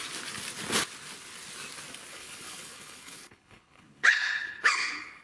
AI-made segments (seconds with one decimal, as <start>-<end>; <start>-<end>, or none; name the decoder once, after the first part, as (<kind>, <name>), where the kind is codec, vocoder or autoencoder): 2.1-5.2 (codec, HILCodec)